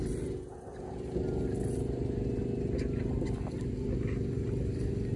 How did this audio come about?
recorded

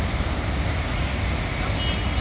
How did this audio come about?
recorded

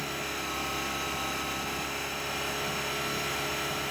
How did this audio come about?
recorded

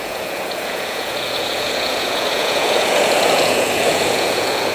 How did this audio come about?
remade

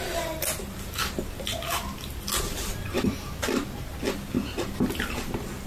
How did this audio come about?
recorded